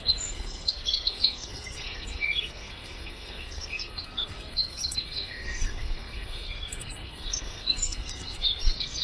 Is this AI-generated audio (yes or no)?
yes